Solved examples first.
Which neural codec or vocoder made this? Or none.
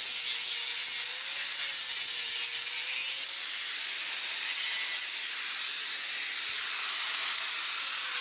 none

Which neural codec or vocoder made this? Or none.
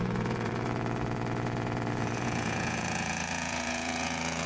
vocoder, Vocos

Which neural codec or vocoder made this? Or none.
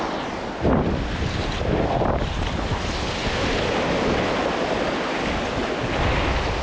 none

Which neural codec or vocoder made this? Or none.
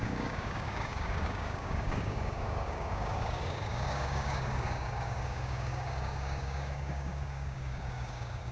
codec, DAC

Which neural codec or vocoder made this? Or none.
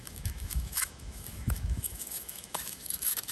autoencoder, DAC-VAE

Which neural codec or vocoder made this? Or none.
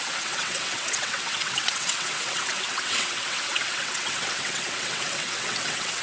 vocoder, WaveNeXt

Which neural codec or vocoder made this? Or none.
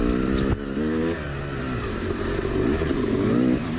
none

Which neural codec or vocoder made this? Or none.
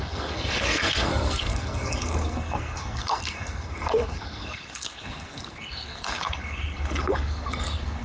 codec, SNAC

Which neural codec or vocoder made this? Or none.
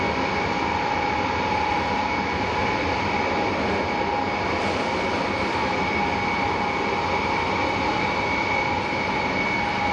none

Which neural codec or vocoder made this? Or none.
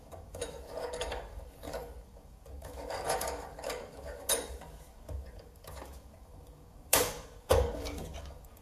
codec, DAC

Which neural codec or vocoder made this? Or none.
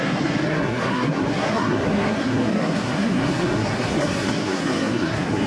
codec, SNAC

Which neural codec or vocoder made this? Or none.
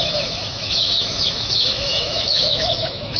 autoencoder, DAC-VAE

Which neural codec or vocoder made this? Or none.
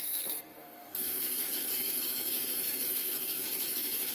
codec, SNAC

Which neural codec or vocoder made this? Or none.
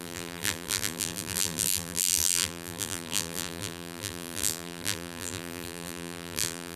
vocoder, BigVGAN v2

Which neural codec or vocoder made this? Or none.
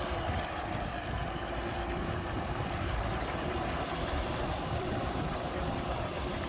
vocoder, BigVGAN v2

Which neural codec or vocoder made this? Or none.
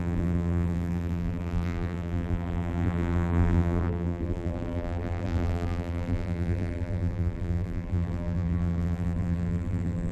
vocoder, BigVGAN v2